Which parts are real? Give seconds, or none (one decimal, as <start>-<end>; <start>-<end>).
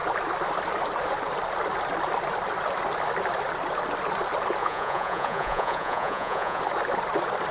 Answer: 0.0-4.6; 6.6-7.5